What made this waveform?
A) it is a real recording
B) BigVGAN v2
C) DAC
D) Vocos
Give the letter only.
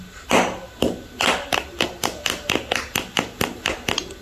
A